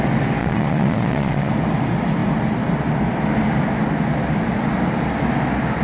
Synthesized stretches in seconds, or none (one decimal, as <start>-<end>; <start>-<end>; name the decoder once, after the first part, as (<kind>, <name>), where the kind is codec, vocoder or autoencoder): 0.4-1.5 (vocoder, Vocos)